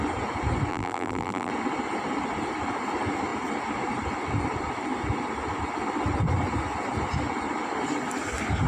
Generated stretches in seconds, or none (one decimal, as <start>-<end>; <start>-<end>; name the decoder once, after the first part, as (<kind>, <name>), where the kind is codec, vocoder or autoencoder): 0.7-1.5 (vocoder, BigVGAN v2)